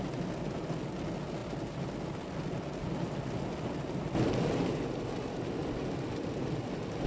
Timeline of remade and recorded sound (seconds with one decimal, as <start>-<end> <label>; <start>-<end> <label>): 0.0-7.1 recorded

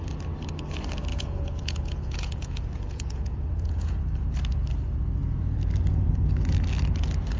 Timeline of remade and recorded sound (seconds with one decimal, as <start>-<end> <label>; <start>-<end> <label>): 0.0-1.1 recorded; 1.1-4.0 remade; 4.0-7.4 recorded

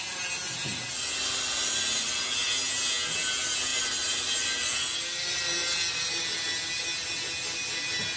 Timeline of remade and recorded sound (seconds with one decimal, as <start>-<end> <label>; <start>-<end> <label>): 0.0-8.2 recorded